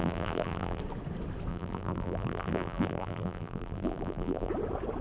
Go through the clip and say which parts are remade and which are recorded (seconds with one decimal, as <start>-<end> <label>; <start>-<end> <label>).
0.0-0.8 remade; 0.8-1.5 recorded; 1.5-4.5 remade; 4.5-5.0 recorded